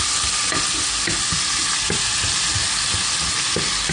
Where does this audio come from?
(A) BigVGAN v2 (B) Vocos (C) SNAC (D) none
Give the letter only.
D